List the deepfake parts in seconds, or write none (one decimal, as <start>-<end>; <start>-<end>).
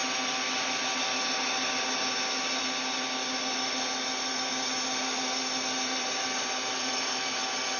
none